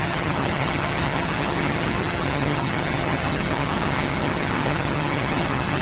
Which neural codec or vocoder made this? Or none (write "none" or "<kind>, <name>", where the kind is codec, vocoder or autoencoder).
vocoder, HiFi-GAN